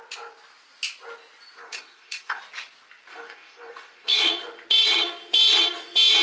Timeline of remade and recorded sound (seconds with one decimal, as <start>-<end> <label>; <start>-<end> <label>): 0.0-1.6 recorded; 1.6-2.4 remade; 2.4-3.1 recorded; 3.1-4.2 remade; 4.2-6.2 recorded